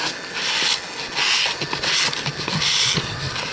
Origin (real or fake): real